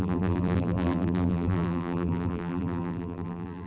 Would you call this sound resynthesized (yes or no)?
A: yes